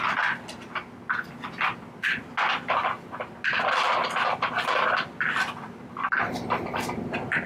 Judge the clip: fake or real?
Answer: real